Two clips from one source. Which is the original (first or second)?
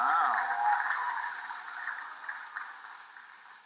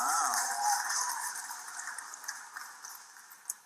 first